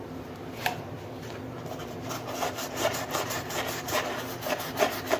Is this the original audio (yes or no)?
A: yes